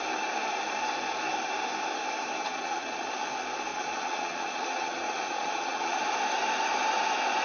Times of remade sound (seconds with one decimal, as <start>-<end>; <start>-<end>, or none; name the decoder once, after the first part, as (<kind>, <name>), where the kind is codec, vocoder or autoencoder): 2.4-3.1 (vocoder, Vocos); 3.7-6.0